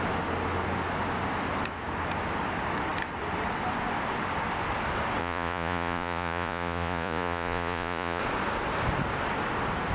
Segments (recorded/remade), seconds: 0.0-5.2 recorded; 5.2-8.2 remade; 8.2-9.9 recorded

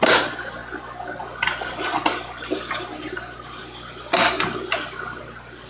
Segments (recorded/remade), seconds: 0.0-5.7 recorded

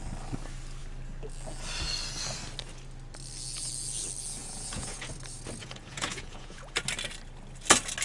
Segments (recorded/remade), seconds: 0.0-4.4 recorded; 4.4-5.1 remade; 5.1-5.6 recorded; 5.6-6.8 remade; 6.8-8.0 recorded

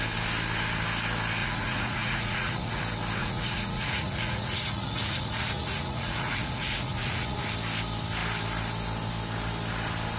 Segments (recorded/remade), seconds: 0.0-1.4 recorded; 1.4-2.8 remade; 2.8-3.2 recorded; 3.2-7.5 remade; 7.5-10.2 recorded

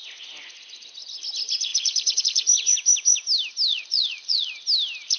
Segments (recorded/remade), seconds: 0.0-1.7 recorded; 1.7-2.2 remade; 2.2-3.7 recorded; 3.7-4.5 remade; 4.5-5.2 recorded

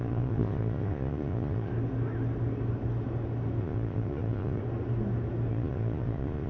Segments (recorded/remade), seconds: 0.0-1.7 remade; 1.7-3.6 recorded; 3.6-4.6 remade; 4.6-5.5 recorded; 5.5-6.5 remade

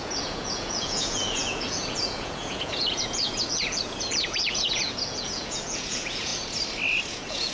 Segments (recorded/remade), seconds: 0.0-6.3 remade; 6.3-7.1 recorded; 7.1-7.5 remade